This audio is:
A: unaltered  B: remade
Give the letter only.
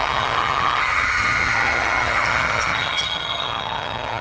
B